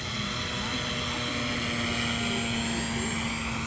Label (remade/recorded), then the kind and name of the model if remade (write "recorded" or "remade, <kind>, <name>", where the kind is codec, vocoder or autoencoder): recorded